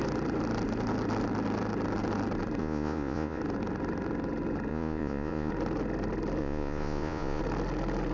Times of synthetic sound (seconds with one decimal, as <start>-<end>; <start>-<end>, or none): 2.6-3.4; 4.7-5.5; 6.4-7.4